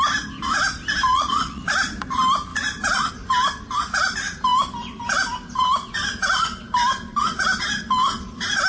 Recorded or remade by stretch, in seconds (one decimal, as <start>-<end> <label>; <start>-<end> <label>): 0.0-1.1 recorded; 1.1-1.6 remade; 1.6-8.7 recorded